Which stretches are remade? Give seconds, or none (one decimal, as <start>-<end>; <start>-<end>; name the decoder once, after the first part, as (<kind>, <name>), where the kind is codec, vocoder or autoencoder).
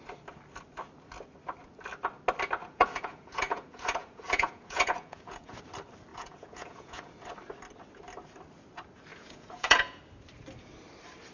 2.6-5.6 (vocoder, Vocos); 6.1-7.1; 9.1-10.0